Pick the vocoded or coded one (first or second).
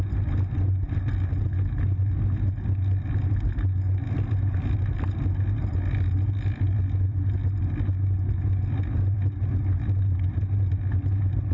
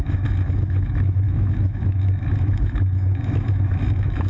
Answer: second